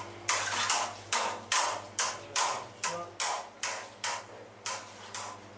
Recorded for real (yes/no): yes